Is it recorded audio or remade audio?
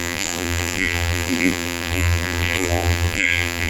remade